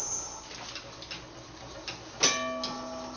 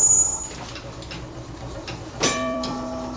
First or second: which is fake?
second